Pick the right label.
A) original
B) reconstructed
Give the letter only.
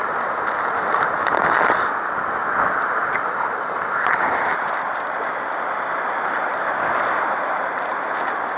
A